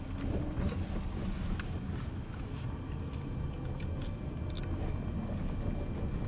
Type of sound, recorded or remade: recorded